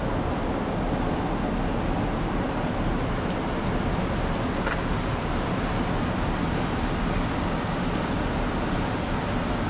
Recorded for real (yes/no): yes